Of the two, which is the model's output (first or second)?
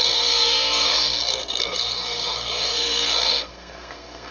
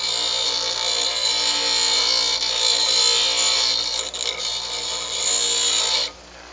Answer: first